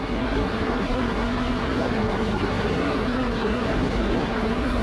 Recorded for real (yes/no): no